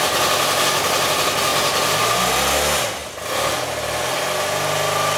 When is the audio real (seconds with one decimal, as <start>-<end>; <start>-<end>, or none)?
0.0-1.5; 2.0-5.2